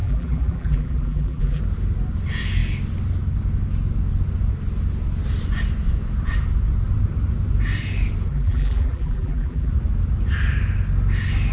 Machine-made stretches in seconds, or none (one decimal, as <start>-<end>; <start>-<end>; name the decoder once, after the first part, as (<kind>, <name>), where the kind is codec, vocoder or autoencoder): 0.0-1.6 (vocoder, BigVGAN v2); 8.3-9.7